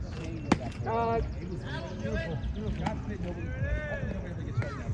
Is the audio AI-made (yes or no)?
no